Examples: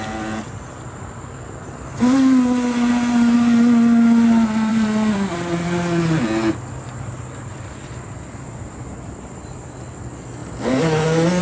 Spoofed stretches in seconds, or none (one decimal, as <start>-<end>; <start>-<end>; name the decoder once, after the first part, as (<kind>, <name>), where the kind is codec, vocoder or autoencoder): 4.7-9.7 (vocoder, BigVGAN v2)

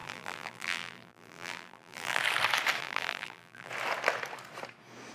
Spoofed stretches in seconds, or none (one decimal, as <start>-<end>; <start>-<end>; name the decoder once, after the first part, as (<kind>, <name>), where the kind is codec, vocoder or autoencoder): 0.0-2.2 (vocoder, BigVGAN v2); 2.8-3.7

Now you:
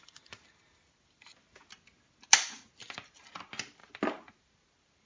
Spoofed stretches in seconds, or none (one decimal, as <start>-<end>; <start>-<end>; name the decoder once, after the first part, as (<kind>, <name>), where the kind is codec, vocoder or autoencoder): none

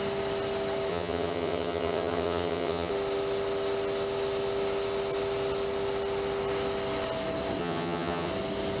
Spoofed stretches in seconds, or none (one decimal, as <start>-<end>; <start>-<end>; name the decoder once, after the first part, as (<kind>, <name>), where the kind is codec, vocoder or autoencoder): 0.9-2.9 (vocoder, HiFi-GAN); 7.6-8.3

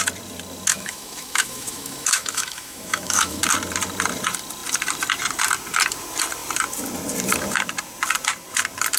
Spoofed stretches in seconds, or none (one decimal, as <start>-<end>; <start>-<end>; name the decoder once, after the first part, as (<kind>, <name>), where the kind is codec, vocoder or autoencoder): 0.7-3.4 (autoencoder, DAC-VAE)